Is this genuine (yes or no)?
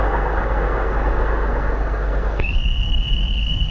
no